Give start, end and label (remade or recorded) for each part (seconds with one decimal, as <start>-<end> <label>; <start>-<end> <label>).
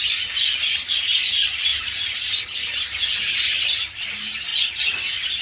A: 0.0-5.4 recorded